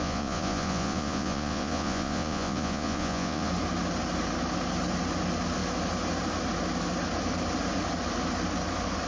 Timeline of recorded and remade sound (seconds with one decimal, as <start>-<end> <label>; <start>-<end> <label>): 0.0-3.5 remade; 3.5-9.1 recorded